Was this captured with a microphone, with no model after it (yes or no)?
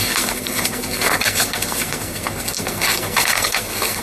no